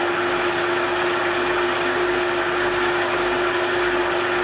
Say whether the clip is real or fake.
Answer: real